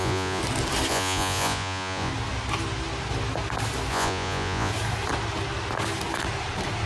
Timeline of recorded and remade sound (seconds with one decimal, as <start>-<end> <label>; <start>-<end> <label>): 0.0-0.4 remade; 0.4-0.9 recorded; 0.9-2.1 remade; 2.1-3.9 recorded; 3.9-4.7 remade; 4.7-6.9 recorded